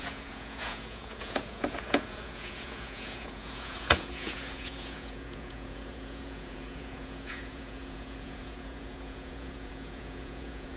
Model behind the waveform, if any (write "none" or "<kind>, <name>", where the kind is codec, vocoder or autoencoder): vocoder, Vocos